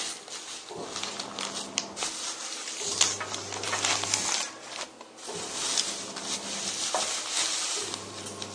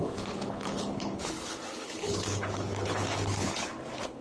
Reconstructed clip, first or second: second